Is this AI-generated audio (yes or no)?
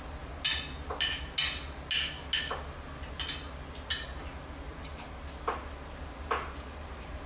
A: no